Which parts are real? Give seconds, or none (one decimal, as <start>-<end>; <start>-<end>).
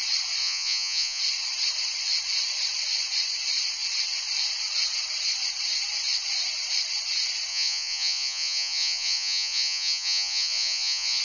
0.0-0.4; 1.2-7.5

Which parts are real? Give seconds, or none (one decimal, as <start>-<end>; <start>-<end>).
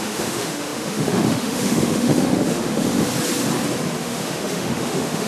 3.1-4.0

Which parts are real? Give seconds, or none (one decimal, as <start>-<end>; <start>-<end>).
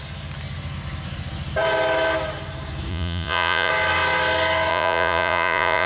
0.0-2.9; 3.7-4.7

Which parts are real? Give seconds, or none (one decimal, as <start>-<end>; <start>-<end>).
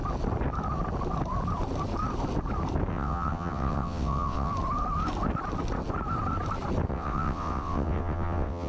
0.0-2.9; 4.5-6.9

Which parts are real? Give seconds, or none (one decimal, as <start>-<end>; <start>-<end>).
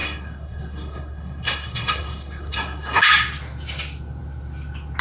3.0-5.0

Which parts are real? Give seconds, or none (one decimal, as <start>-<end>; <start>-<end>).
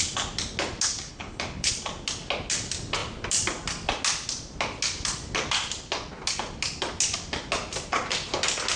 0.0-1.1; 1.7-8.8